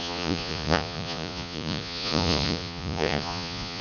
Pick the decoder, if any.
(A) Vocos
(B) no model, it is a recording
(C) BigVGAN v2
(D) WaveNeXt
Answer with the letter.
A